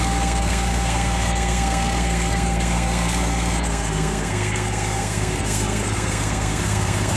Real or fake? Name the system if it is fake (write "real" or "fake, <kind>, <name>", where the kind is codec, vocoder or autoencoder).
fake, codec, SNAC